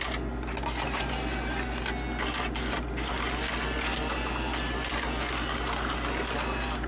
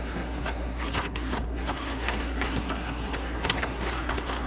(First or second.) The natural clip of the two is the first